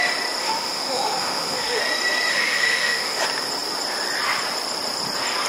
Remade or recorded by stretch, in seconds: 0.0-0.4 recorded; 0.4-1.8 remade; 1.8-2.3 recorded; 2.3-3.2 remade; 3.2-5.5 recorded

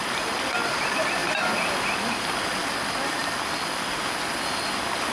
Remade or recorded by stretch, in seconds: 0.0-5.1 recorded

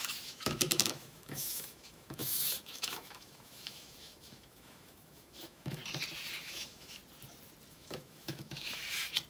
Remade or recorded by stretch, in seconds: 0.0-5.8 remade; 5.8-6.4 recorded; 6.4-7.0 remade; 7.0-7.7 recorded; 7.7-8.8 remade; 8.8-9.3 recorded

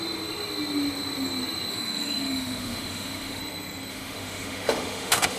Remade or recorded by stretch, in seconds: 0.0-1.7 recorded; 1.7-3.4 remade; 3.4-3.9 recorded; 3.9-5.4 remade